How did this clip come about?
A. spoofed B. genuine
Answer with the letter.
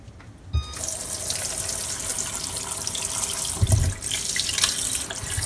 B